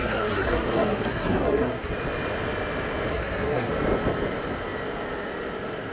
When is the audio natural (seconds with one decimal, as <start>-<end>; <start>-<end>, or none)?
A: 1.9-3.1; 3.7-5.9